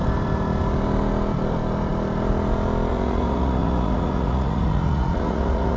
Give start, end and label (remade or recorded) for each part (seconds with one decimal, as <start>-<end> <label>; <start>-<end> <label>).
0.0-2.9 recorded; 2.9-5.8 remade